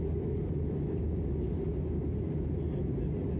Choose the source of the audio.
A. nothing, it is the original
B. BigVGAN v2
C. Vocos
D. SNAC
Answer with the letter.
A